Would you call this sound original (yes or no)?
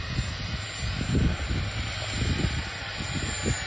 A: yes